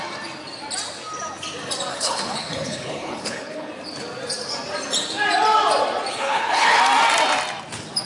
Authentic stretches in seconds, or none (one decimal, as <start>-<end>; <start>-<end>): 0.0-1.9; 3.7-6.1; 6.8-8.1